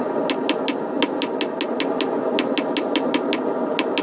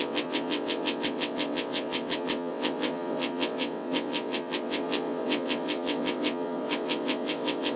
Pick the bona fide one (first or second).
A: first